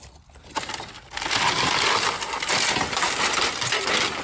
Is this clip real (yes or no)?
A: yes